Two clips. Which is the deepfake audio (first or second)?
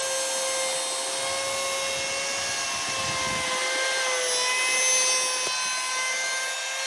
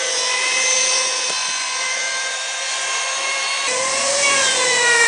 second